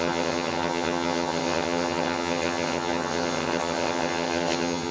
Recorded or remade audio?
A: remade